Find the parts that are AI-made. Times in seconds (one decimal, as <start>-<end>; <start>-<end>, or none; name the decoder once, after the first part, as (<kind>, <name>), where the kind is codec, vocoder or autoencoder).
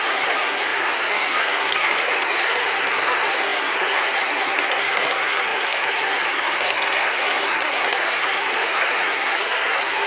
0.0-10.1 (codec, SNAC)